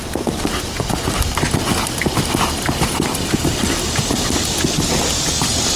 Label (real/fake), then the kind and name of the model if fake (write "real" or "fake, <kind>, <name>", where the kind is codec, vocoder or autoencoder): real